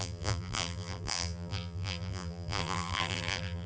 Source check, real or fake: fake